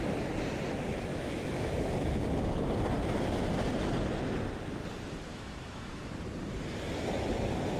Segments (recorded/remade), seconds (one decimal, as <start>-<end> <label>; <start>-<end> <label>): 0.0-1.1 recorded; 1.1-2.2 remade; 2.2-5.3 recorded; 5.3-6.1 remade; 6.1-7.8 recorded